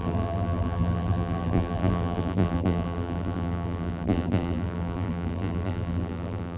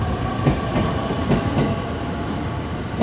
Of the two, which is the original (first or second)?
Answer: second